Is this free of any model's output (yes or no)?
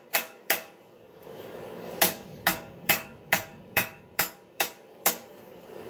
no